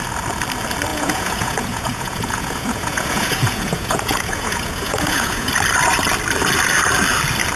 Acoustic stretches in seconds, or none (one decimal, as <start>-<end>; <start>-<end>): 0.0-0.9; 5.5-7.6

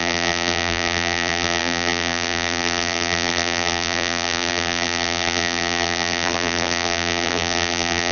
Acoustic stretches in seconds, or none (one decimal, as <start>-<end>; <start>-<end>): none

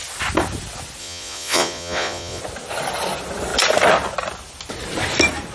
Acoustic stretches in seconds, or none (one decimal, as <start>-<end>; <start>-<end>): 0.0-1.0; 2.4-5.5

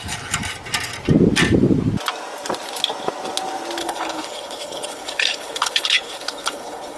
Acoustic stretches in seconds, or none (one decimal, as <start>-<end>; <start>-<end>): 0.0-3.8

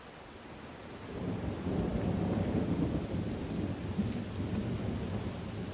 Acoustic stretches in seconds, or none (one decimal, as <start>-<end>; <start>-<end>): 0.0-5.7